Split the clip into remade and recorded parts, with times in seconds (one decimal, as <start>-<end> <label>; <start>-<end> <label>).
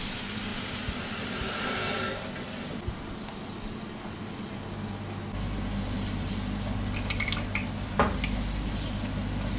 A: 0.0-9.6 recorded